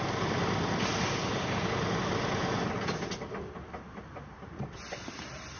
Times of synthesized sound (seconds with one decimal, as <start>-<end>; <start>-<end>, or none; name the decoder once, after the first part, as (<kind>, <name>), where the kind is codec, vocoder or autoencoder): none